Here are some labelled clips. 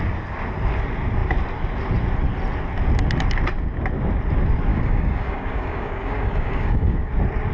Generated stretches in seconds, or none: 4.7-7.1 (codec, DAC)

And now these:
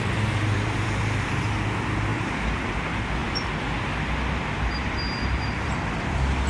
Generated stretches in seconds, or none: 0.0-6.5 (vocoder, BigVGAN v2)

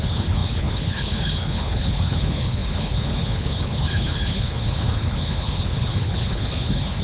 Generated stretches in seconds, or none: 0.0-7.0 (codec, HILCodec)

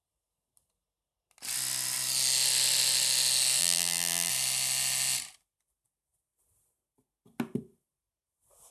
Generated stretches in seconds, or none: 3.6-4.3 (vocoder, BigVGAN v2)

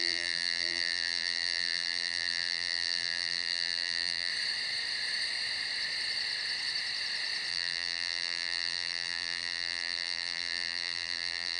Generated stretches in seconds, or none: 0.0-4.3 (vocoder, BigVGAN v2); 7.5-11.6

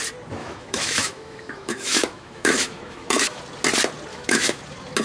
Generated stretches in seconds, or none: 0.4-3.4 (autoencoder, DAC-VAE); 4.1-4.6

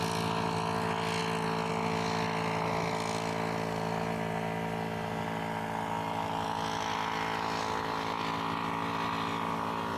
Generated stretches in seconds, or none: none